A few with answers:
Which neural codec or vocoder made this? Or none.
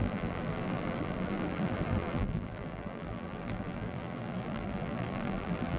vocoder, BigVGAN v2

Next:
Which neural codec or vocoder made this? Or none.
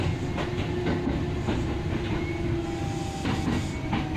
none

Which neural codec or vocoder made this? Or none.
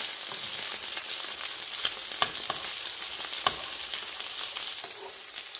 none